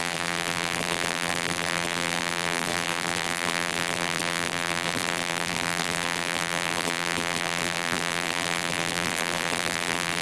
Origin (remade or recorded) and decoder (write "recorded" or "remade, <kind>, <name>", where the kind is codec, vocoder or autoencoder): remade, vocoder, BigVGAN v2